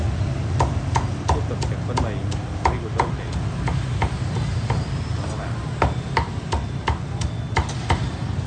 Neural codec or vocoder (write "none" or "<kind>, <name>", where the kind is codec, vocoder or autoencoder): none